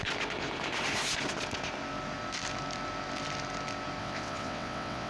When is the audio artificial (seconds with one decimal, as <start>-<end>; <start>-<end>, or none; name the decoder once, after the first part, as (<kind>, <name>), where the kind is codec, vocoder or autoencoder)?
4.0-5.1 (vocoder, WaveNeXt)

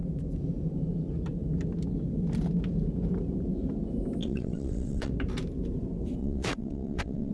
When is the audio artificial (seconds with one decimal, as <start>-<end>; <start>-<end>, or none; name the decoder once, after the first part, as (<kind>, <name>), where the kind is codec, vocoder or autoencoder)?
4.2-5.1 (vocoder, WaveNeXt); 6.2-7.3

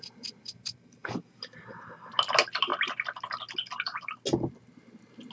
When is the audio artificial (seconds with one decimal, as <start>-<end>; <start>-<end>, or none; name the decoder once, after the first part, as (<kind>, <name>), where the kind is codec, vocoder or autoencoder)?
none

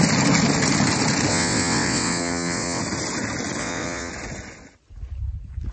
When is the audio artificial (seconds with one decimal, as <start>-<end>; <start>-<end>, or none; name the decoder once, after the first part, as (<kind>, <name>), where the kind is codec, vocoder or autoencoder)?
1.3-2.8 (vocoder, WaveNeXt); 3.6-4.1